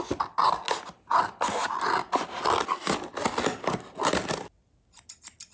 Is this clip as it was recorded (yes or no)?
yes